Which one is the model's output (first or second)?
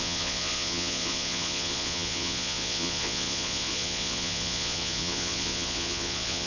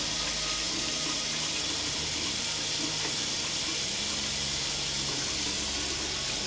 first